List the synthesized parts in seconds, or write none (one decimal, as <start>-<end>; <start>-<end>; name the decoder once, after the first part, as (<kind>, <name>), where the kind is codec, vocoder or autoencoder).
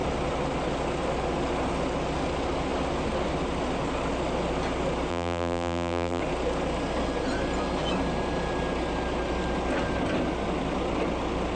5.1-6.2 (vocoder, BigVGAN v2)